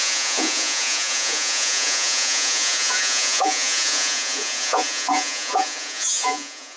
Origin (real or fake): fake